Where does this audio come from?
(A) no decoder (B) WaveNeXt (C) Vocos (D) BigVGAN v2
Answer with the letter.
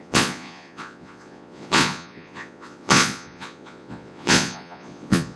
C